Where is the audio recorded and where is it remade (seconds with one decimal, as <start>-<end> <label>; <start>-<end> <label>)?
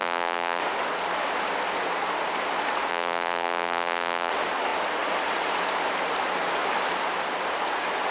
0.0-0.6 remade; 0.6-2.9 recorded; 2.9-4.3 remade; 4.3-8.1 recorded